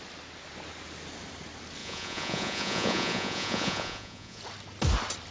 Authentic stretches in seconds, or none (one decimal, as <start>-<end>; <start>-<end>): 0.0-1.8; 4.4-5.3